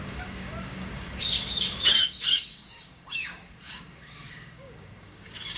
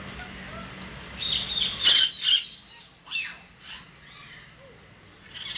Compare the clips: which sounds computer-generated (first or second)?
first